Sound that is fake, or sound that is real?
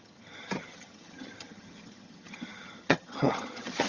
fake